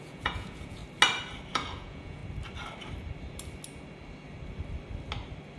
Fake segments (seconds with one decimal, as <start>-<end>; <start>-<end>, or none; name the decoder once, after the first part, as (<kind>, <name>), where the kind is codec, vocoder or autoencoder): 0.0-0.8 (vocoder, Vocos); 1.5-2.2